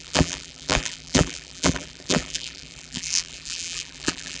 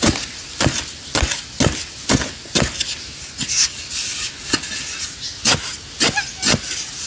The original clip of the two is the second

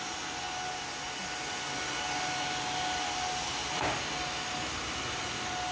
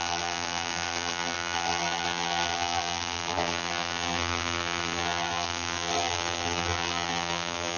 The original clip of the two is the first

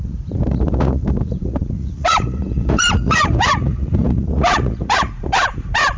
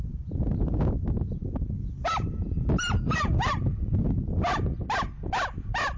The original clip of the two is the second